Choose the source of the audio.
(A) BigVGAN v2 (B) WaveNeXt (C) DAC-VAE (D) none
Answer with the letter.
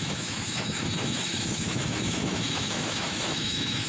C